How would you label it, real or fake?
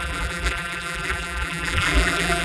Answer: fake